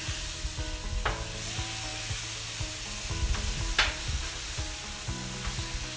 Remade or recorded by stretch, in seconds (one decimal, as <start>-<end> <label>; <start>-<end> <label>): 0.0-6.0 recorded